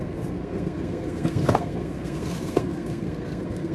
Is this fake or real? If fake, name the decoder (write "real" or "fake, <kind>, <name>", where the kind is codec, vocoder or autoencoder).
fake, codec, SNAC